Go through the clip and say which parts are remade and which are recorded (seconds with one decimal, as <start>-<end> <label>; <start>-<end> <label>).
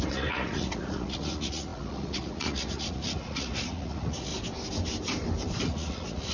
0.0-4.3 remade; 4.3-5.6 recorded; 5.6-6.3 remade